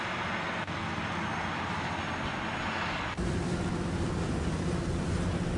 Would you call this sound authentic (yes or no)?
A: yes